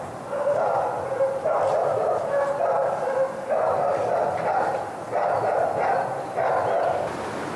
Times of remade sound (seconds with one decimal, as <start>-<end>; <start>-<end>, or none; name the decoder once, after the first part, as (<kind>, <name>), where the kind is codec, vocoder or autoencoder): none